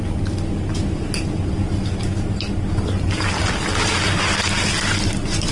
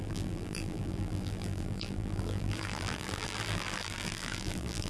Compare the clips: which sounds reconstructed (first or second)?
second